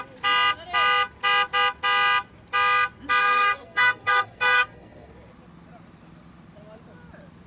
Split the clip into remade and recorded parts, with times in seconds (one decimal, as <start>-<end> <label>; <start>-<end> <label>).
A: 0.0-3.2 recorded; 3.2-5.1 remade; 5.1-7.5 recorded